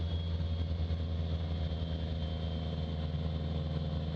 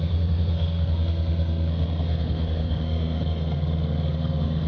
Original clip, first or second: first